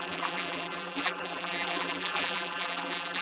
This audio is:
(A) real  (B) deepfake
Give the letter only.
B